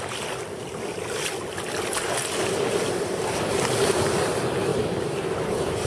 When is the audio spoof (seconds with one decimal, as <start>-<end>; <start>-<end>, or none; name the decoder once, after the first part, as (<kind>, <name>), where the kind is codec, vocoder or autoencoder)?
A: none